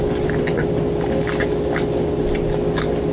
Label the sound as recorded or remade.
recorded